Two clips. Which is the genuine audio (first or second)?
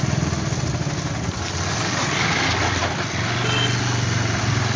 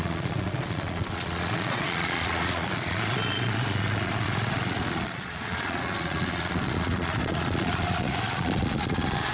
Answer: first